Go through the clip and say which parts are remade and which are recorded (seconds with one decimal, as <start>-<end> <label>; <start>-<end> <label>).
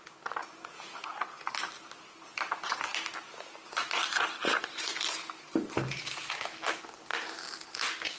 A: 0.0-0.4 recorded; 0.4-1.0 remade; 1.0-8.2 recorded